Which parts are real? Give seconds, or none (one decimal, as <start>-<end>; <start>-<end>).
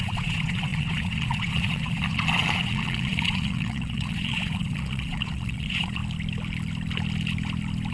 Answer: 6.0-7.9